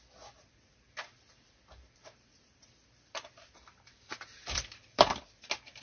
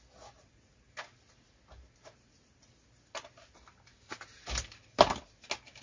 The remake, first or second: first